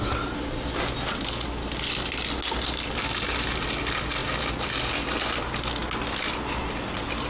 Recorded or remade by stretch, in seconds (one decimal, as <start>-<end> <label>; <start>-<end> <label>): 0.0-7.3 recorded